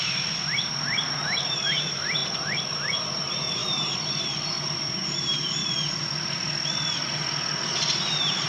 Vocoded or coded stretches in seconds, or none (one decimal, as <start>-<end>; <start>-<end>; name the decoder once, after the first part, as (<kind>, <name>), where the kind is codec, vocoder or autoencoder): 0.0-5.6 (vocoder, BigVGAN v2); 8.1-8.5